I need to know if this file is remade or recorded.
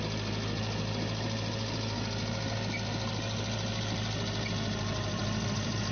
remade